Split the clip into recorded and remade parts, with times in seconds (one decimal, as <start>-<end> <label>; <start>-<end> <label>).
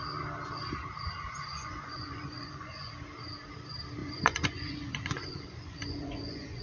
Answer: 0.0-1.5 recorded; 1.5-2.9 remade; 2.9-4.0 recorded; 4.0-6.6 remade